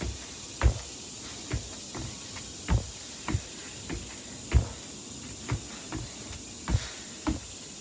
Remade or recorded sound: recorded